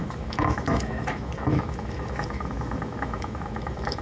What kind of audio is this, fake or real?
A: fake